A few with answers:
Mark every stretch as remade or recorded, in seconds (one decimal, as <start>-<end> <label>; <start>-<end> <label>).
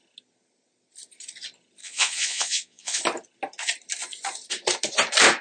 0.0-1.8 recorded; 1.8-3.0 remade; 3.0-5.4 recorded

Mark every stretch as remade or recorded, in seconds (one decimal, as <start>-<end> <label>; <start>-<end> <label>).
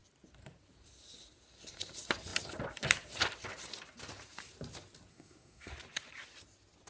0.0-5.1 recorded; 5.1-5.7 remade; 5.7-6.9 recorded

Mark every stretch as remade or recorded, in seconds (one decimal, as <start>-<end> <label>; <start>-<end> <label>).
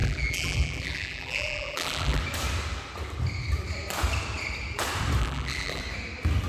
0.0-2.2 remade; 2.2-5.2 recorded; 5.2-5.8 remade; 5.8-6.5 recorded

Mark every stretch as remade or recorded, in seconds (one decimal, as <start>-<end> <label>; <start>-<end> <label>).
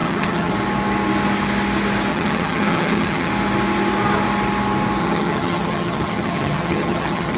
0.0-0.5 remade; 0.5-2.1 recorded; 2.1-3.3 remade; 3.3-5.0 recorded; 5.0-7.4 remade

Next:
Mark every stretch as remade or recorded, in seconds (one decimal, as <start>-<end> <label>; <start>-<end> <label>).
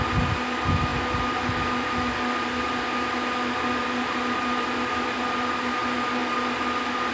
0.0-7.1 recorded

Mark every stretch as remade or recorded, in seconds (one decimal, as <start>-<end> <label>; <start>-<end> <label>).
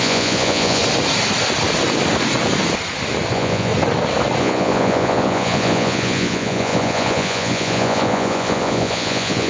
0.0-0.8 remade; 0.8-3.3 recorded; 3.3-3.7 remade; 3.7-4.4 recorded; 4.4-9.5 remade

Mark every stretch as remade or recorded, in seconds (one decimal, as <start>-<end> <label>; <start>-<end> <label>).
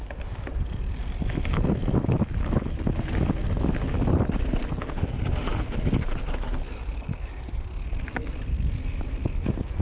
0.0-9.8 recorded